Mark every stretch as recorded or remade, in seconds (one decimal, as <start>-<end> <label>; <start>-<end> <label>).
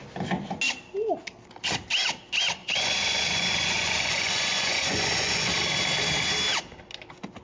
0.0-2.6 recorded; 2.6-5.5 remade; 5.5-7.4 recorded